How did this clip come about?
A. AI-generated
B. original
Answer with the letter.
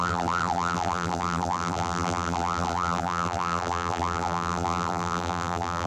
A